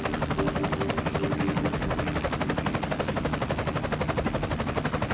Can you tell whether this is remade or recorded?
recorded